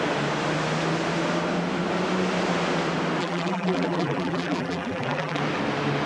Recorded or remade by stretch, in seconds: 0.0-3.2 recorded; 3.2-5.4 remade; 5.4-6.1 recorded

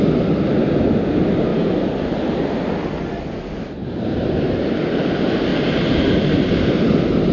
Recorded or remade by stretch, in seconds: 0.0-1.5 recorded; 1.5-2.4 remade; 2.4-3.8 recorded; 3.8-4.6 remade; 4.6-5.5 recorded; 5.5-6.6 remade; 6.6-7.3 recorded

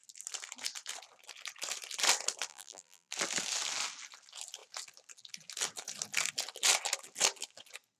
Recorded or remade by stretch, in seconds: 0.0-2.5 recorded; 2.5-3.1 remade; 3.1-8.0 recorded

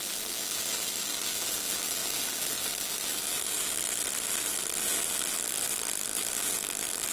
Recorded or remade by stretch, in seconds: 0.0-7.1 recorded